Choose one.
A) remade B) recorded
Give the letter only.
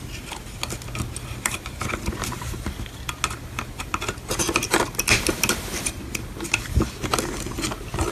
B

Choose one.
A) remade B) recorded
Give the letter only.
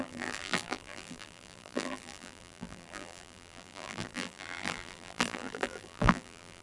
A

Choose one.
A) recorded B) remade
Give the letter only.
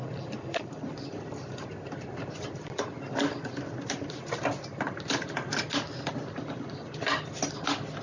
A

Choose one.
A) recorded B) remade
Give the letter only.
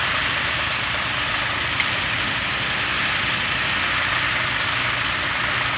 A